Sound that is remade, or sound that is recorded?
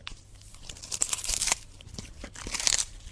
remade